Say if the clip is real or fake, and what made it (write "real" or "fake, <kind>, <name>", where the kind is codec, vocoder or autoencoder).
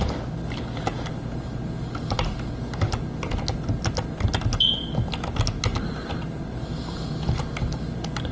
real